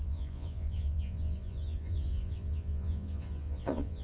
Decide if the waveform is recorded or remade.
remade